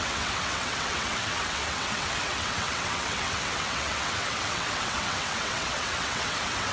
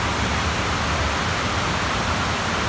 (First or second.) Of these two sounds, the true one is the second